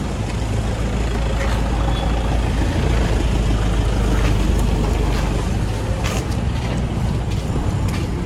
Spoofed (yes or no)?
no